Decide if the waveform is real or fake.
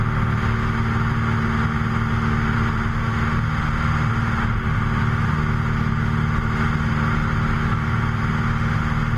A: real